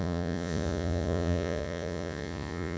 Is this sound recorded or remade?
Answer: remade